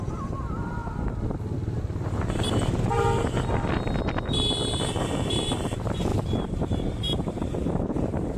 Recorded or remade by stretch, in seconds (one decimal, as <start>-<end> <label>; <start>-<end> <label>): 0.0-0.8 remade; 0.8-4.0 recorded; 4.0-8.4 remade